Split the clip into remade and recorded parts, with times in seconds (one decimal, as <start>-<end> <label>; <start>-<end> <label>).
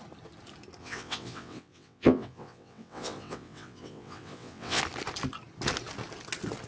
0.0-0.8 recorded; 0.8-4.8 remade; 4.8-6.7 recorded